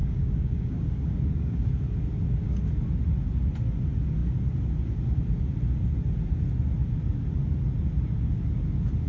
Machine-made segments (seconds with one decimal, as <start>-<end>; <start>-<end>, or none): 0.0-1.8